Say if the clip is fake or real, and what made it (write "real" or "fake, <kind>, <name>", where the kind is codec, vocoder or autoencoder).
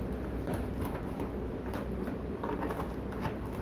real